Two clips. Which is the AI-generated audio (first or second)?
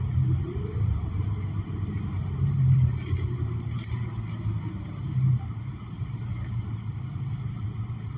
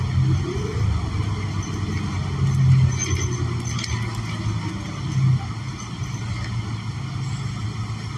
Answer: first